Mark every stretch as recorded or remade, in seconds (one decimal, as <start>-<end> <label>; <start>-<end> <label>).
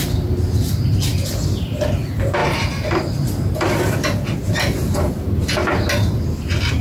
0.0-6.8 recorded